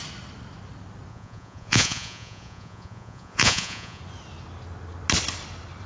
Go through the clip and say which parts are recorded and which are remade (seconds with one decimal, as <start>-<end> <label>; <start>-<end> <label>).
0.0-1.1 recorded; 1.1-4.0 remade; 4.0-5.9 recorded